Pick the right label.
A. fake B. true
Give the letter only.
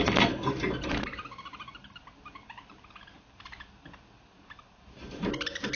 B